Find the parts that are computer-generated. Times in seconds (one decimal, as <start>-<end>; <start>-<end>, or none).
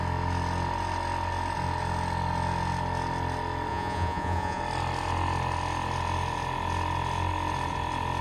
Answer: 3.7-4.6